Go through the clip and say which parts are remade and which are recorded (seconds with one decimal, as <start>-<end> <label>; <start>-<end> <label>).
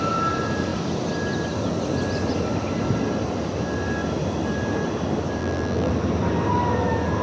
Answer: 0.0-5.4 recorded; 5.4-5.9 remade; 5.9-7.2 recorded